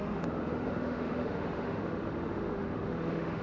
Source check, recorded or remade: remade